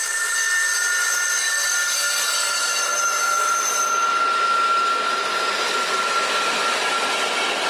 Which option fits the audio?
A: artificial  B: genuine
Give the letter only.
B